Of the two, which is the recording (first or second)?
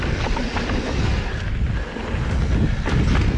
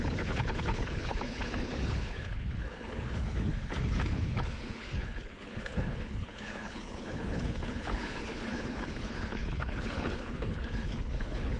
first